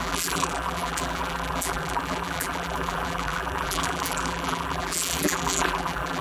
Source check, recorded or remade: remade